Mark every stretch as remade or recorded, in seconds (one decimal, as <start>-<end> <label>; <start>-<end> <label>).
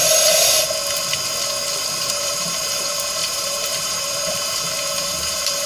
0.0-2.1 recorded; 2.1-5.7 remade